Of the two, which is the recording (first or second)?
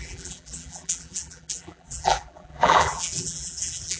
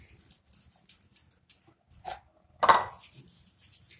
second